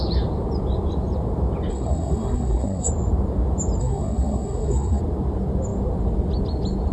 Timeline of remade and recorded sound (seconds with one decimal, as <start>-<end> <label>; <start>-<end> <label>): 0.0-1.7 recorded; 1.7-2.9 remade; 2.9-3.8 recorded; 3.8-5.0 remade; 5.0-6.9 recorded